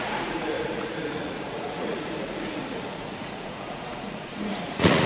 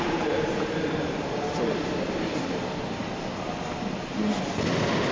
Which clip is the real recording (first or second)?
second